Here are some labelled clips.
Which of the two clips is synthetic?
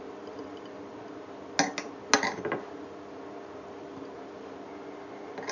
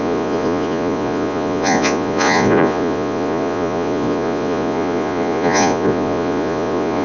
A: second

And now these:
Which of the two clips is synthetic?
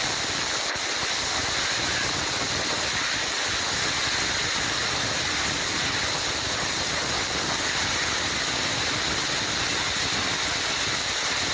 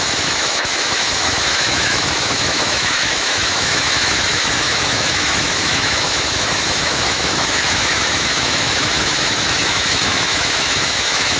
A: second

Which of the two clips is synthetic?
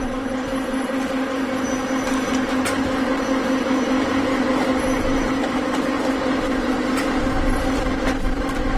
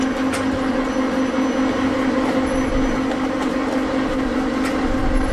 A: first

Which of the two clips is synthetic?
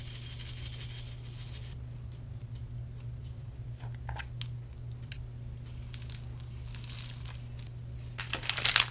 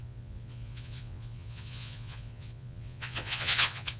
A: second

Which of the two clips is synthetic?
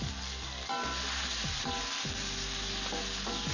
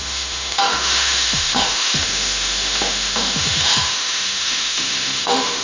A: second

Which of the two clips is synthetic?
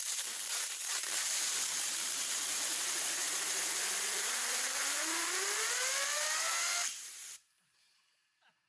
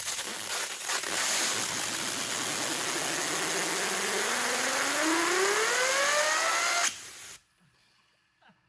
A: first